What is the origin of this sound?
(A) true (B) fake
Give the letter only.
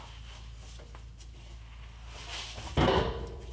A